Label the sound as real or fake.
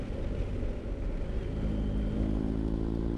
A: real